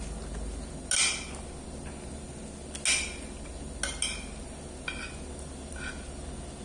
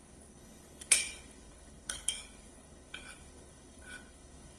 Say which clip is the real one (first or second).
first